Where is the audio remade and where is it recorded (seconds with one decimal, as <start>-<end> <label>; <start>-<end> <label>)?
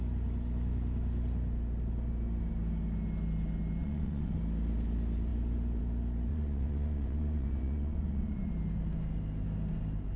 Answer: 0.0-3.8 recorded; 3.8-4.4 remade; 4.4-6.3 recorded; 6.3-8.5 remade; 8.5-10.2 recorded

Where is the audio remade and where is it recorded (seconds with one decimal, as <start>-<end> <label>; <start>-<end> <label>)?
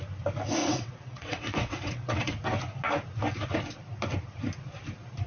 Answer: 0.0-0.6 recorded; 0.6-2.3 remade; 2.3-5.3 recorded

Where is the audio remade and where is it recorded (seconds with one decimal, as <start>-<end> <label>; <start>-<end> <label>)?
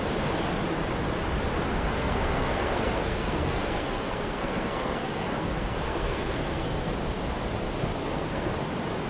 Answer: 0.0-1.7 recorded; 1.7-6.9 remade; 6.9-8.0 recorded; 8.0-8.5 remade; 8.5-9.1 recorded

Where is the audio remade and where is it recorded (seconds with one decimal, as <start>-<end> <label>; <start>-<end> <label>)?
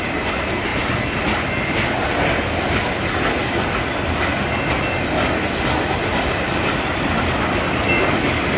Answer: 0.0-8.6 recorded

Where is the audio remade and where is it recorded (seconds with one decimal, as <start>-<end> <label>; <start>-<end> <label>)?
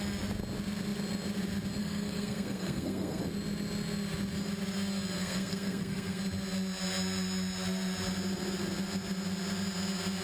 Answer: 0.0-1.8 recorded; 1.8-3.2 remade; 3.2-5.2 recorded; 5.2-6.2 remade; 6.2-10.2 recorded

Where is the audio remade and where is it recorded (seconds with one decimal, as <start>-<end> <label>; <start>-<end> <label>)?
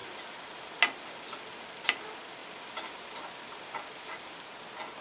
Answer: 0.0-5.0 recorded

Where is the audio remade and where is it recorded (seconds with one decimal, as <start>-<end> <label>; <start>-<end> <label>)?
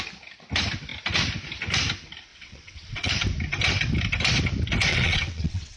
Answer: 0.0-2.3 recorded; 2.3-3.1 remade; 3.1-4.9 recorded; 4.9-5.8 remade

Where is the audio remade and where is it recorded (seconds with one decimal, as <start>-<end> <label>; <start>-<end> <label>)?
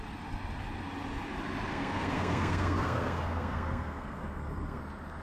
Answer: 0.0-1.7 recorded; 1.7-4.8 remade; 4.8-5.2 recorded